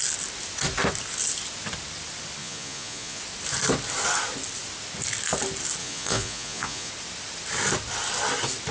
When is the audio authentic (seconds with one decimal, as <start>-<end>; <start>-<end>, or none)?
0.0-2.4; 3.2-5.8; 6.9-8.7